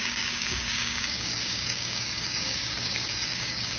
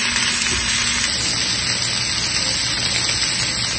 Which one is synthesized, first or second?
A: first